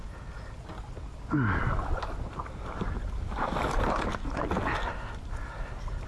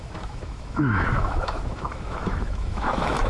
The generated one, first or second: second